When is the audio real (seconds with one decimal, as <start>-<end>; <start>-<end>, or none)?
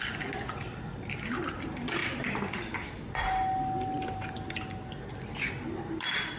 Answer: 0.0-6.4